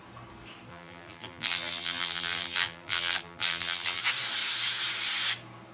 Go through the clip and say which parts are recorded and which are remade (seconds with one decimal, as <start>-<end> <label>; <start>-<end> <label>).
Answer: 0.0-0.7 recorded; 0.7-4.0 remade; 4.0-5.7 recorded